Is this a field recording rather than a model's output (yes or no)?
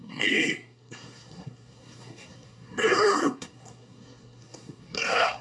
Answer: no